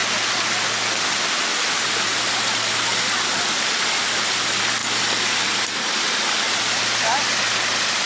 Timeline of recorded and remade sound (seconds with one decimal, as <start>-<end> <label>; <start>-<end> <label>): 0.0-8.1 recorded